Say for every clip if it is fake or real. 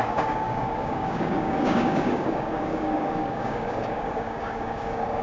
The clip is fake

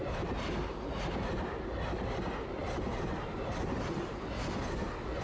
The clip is real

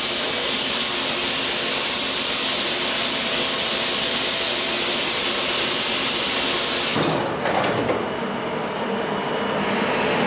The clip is real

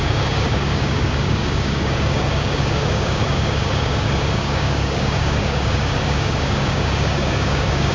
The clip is fake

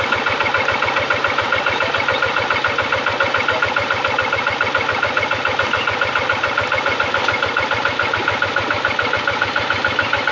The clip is real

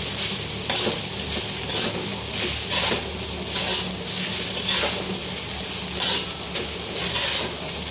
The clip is real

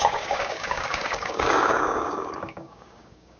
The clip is fake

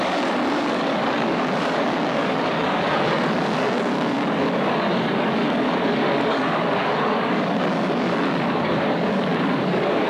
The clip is fake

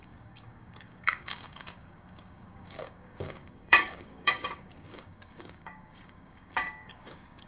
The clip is fake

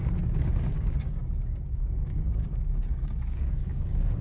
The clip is fake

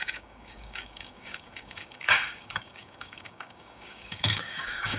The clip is fake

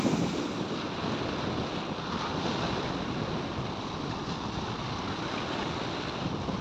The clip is real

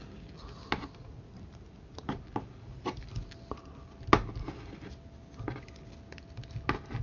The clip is real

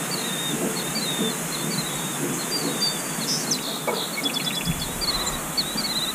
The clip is real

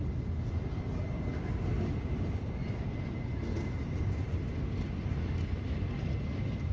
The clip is real